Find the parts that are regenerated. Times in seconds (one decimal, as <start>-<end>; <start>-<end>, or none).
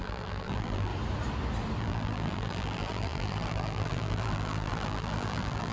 0.0-0.9; 1.8-5.7